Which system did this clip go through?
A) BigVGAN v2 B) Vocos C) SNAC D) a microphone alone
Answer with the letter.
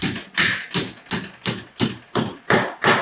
D